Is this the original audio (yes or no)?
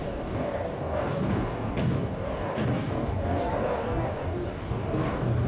no